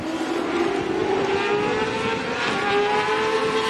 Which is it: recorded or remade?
recorded